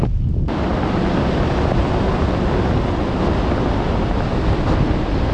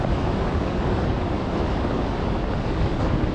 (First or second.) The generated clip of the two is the second